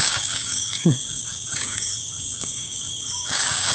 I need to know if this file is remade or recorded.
remade